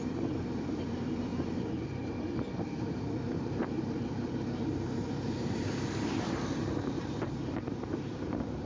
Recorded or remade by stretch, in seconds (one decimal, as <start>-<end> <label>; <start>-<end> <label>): 0.0-1.3 remade; 1.3-2.5 recorded; 2.5-8.7 remade